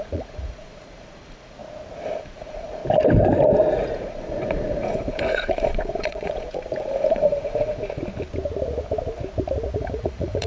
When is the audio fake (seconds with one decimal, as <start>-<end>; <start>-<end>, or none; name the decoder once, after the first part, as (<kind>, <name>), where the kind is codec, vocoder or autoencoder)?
0.0-1.6 (vocoder, Vocos); 2.2-2.8; 3.7-8.0; 9.8-10.5